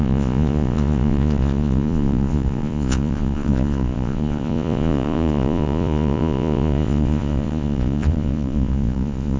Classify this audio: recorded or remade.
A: remade